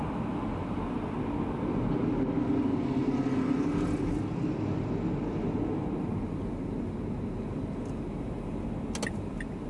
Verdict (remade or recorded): recorded